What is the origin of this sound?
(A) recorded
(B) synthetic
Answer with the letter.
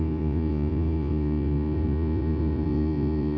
B